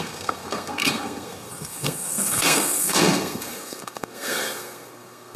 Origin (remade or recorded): remade